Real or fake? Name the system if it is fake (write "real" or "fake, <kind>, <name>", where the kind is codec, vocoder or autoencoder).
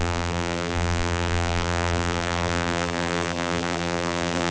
fake, vocoder, BigVGAN v2